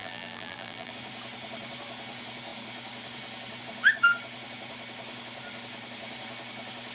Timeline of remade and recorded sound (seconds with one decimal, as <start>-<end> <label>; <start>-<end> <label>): 0.0-0.9 remade; 0.9-6.9 recorded